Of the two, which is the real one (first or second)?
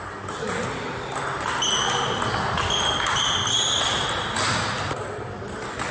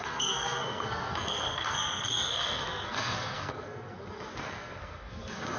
first